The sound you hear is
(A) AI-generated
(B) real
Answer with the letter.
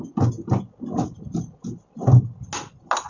B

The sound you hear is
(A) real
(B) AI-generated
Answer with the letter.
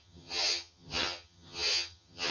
B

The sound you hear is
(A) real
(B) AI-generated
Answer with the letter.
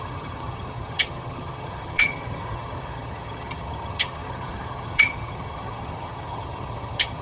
B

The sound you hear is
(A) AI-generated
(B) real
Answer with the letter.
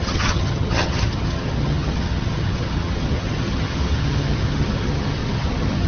A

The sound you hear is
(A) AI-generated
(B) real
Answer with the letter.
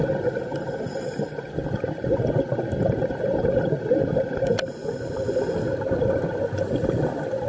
B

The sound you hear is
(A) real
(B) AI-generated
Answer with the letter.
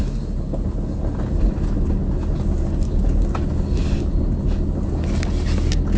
A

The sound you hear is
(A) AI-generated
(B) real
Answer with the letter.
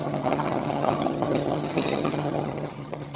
A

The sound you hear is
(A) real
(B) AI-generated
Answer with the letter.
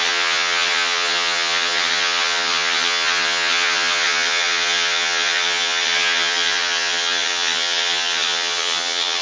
B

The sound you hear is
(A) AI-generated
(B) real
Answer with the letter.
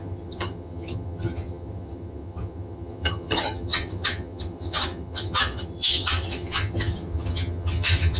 A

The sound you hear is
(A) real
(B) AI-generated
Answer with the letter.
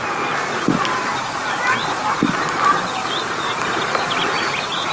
A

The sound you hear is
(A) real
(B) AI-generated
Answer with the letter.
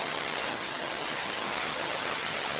B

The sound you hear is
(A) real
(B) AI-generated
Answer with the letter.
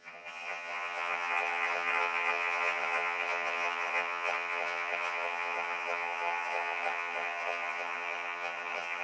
B